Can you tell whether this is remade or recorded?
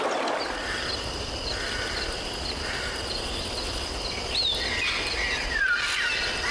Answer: recorded